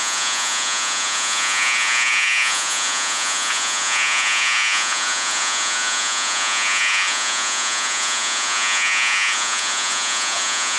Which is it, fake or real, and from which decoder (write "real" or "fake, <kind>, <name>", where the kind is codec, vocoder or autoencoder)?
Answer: fake, vocoder, Vocos